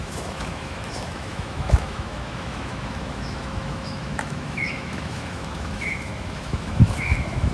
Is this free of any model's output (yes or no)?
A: no